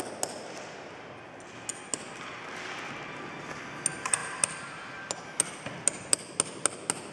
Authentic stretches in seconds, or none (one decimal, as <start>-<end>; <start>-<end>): 0.0-4.2; 5.7-7.1